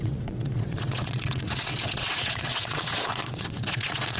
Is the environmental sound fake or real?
fake